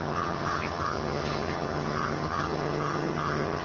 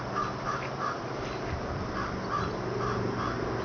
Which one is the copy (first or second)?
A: first